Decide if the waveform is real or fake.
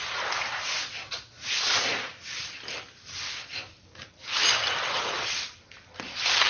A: real